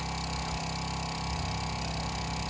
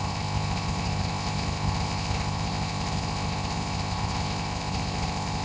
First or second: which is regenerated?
second